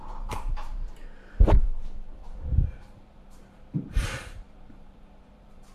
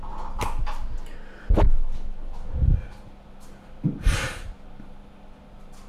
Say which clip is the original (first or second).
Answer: second